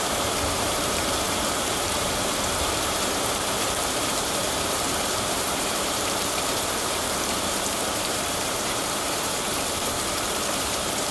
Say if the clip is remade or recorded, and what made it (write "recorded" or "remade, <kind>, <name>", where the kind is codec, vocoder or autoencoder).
remade, vocoder, BigVGAN v2